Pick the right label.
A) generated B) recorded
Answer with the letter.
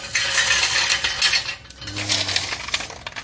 B